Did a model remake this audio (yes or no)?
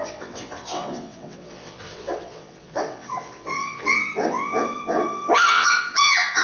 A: yes